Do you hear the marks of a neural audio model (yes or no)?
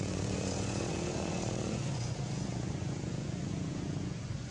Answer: yes